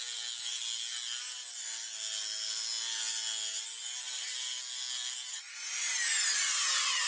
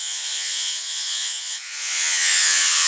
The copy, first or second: second